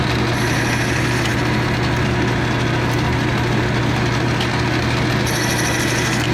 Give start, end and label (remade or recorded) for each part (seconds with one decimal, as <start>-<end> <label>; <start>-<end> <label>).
0.0-6.3 recorded